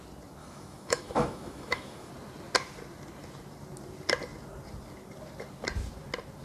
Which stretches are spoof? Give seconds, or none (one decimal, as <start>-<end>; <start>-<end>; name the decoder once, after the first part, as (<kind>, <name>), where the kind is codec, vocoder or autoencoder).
0.4-2.1 (autoencoder, DAC-VAE)